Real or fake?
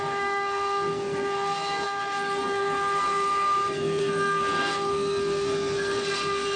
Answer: fake